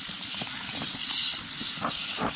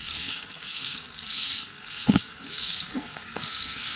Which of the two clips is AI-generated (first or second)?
second